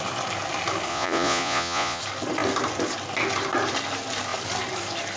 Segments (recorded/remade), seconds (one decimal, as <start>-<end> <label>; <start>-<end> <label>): 0.0-0.9 recorded; 0.9-2.0 remade; 2.0-5.2 recorded